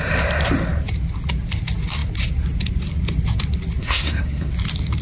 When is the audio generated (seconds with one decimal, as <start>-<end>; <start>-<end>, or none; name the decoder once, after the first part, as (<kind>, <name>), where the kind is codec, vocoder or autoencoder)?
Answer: 3.8-4.5 (codec, SNAC)